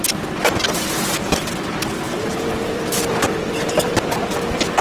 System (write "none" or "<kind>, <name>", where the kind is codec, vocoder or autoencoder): none